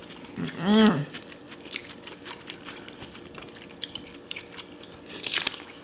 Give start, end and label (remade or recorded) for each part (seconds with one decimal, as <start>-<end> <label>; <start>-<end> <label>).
0.0-5.8 recorded